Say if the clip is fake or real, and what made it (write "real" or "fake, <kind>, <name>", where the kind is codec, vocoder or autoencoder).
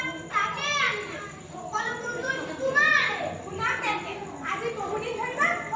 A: real